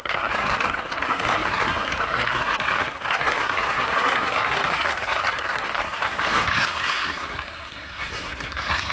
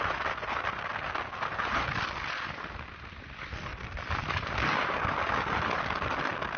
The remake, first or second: first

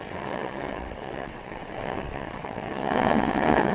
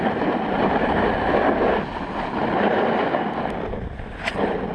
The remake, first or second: first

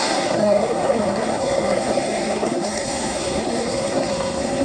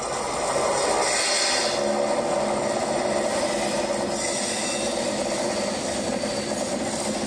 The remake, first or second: first